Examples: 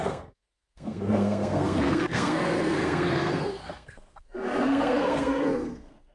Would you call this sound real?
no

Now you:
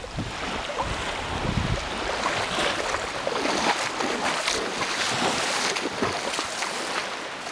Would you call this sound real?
yes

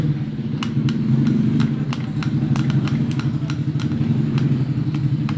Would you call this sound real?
yes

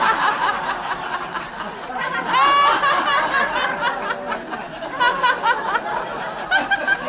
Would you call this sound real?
yes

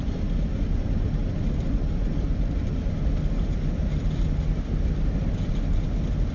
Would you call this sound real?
yes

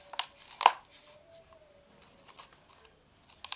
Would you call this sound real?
yes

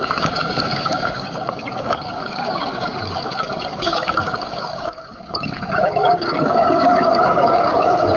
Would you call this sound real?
no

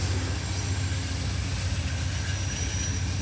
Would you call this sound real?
yes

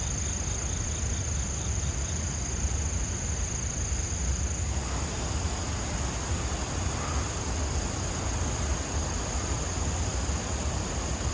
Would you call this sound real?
yes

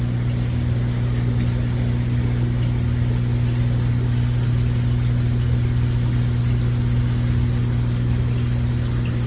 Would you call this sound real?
yes